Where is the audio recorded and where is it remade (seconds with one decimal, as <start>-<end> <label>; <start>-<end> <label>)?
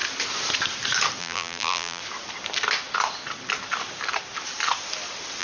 0.0-1.2 recorded; 1.2-2.0 remade; 2.0-5.4 recorded